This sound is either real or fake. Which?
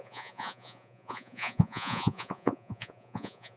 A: fake